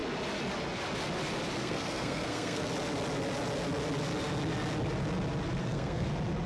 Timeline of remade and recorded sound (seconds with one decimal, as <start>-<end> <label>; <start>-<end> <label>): 0.0-1.6 recorded; 1.6-2.7 remade; 2.7-5.6 recorded; 5.6-6.1 remade; 6.1-6.5 recorded